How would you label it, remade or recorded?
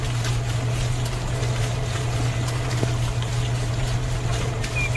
recorded